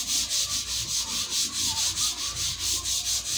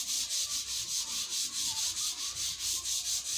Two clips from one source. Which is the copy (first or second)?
second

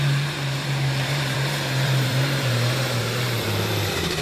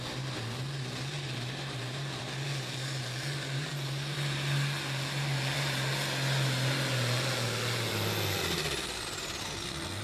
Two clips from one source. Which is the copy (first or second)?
first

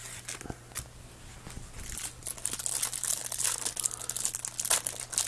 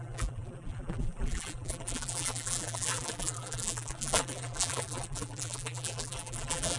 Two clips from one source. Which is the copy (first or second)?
second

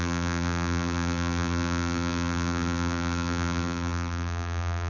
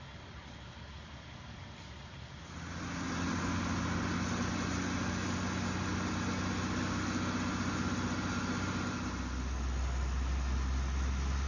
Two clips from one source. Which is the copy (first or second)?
first